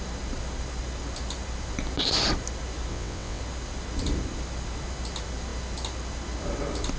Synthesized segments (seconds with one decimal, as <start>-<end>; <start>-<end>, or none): 2.9-3.4

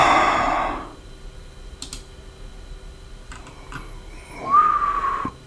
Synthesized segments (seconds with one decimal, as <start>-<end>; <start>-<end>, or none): none